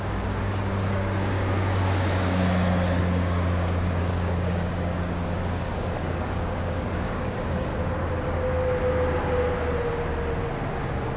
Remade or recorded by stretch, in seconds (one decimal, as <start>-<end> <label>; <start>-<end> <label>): 0.0-2.4 remade; 2.4-3.0 recorded; 3.0-7.7 remade; 7.7-10.6 recorded; 10.6-11.2 remade